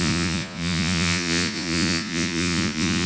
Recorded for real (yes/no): no